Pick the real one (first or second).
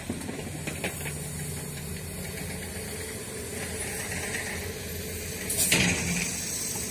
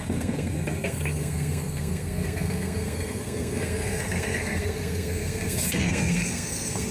first